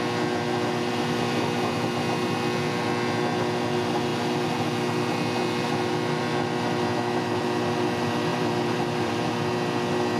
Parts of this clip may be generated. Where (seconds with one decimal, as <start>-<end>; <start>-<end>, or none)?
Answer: 8.3-9.5